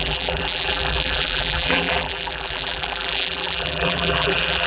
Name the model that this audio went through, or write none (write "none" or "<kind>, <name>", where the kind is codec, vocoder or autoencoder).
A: vocoder, BigVGAN v2